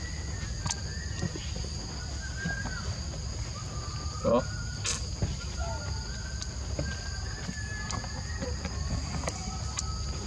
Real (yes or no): yes